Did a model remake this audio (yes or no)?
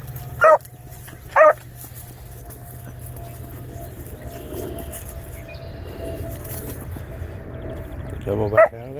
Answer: no